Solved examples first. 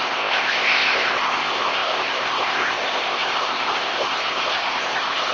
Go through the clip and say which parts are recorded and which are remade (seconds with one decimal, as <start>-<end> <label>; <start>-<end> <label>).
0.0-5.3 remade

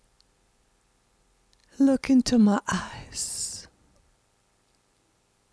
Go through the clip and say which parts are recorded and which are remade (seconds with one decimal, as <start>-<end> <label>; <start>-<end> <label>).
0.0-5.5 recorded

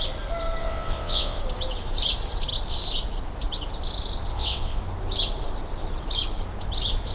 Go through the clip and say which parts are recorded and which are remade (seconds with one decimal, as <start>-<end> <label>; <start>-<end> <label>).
0.0-0.6 recorded; 0.6-1.4 remade; 1.4-4.3 recorded; 4.3-4.8 remade; 4.8-7.1 recorded

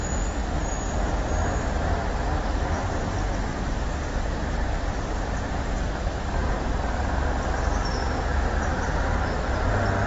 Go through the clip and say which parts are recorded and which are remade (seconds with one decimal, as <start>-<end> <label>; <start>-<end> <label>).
0.0-3.5 recorded; 3.5-7.5 remade; 7.5-8.7 recorded; 8.7-9.7 remade; 9.7-10.1 recorded

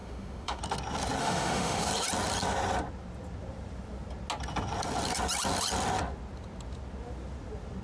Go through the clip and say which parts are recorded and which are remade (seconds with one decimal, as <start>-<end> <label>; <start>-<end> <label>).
0.0-0.6 remade; 0.6-1.2 recorded; 1.2-1.9 remade; 1.9-7.8 recorded

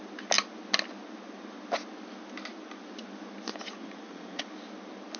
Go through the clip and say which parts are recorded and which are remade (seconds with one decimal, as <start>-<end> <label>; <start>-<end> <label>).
0.0-3.8 recorded; 3.8-4.4 remade; 4.4-5.2 recorded

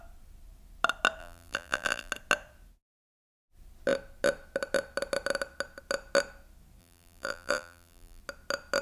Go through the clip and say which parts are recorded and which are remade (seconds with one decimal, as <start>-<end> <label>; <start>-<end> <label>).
0.0-1.2 recorded; 1.2-2.1 remade; 2.1-6.8 recorded; 6.8-8.2 remade; 8.2-8.8 recorded